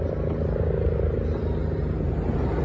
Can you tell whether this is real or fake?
real